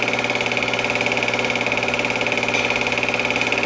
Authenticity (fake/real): real